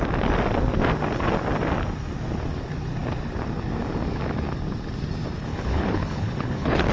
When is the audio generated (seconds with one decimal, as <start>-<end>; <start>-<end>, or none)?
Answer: 5.5-6.9